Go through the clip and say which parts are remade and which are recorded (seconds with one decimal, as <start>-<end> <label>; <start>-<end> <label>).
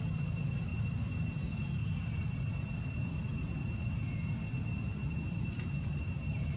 0.0-6.6 recorded